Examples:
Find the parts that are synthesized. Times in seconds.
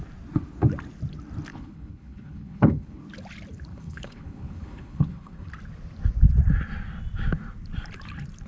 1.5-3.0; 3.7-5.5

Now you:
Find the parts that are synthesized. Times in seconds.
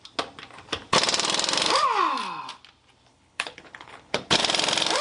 3.1-4.4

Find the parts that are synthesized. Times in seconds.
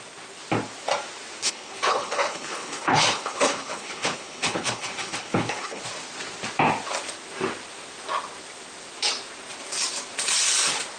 1.4-5.8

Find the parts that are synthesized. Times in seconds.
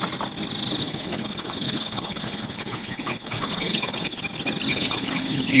0.8-4.2; 4.7-5.6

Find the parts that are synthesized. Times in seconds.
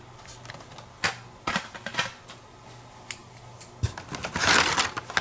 none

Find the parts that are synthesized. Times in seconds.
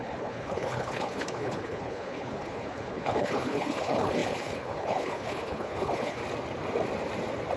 0.0-6.2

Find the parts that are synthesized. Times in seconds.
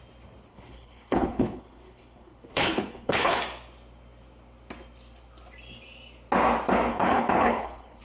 0.5-3.4; 6.9-8.0